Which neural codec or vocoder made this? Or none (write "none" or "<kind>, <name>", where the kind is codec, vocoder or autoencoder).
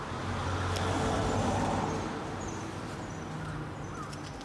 none